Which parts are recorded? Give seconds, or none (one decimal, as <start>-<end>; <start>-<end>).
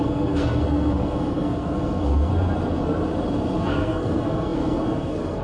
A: 2.3-3.6